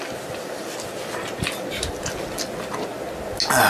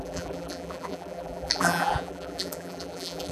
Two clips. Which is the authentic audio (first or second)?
first